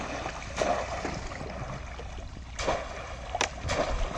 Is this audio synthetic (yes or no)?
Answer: no